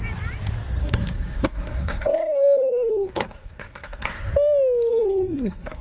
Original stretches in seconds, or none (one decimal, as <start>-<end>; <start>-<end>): 0.0-0.8; 4.3-4.9